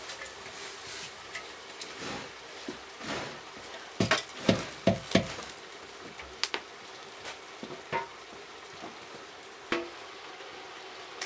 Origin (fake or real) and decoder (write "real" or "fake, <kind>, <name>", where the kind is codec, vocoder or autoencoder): real